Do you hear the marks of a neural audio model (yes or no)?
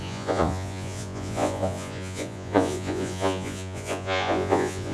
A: yes